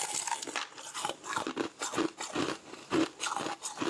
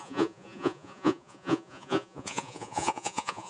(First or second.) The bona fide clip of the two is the first